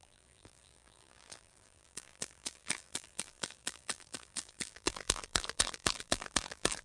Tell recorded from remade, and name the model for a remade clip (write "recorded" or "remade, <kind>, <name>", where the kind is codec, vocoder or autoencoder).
remade, vocoder, BigVGAN v2